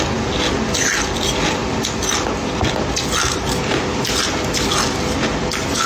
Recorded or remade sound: recorded